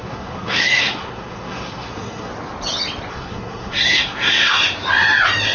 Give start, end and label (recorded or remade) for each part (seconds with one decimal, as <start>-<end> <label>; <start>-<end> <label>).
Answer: 0.0-2.3 remade; 2.3-3.1 recorded; 3.1-4.5 remade; 4.5-5.5 recorded